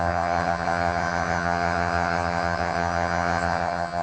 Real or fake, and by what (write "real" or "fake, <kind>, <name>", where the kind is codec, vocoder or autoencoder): fake, vocoder, HiFi-GAN